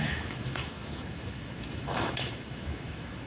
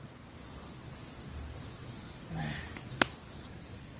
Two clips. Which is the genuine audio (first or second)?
second